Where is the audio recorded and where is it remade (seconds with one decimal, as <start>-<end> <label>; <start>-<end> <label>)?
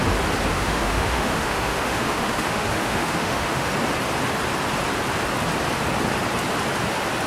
0.0-0.5 recorded; 0.5-3.7 remade; 3.7-7.3 recorded